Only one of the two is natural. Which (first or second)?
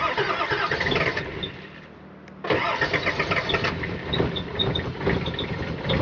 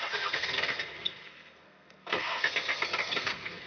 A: first